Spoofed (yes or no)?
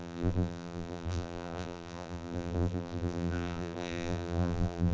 yes